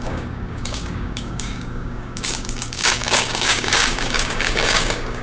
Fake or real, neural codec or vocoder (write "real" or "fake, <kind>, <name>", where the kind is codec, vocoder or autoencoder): fake, codec, DAC